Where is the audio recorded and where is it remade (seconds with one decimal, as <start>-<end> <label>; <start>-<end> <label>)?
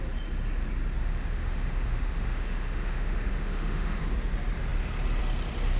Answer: 0.0-1.0 recorded; 1.0-4.0 remade; 4.0-5.8 recorded